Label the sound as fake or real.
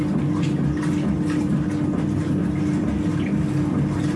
real